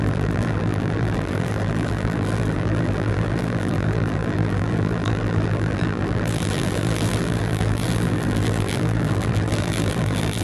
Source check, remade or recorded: remade